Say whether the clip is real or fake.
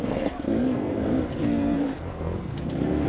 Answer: fake